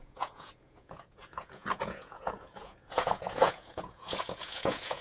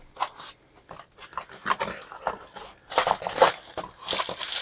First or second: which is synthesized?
first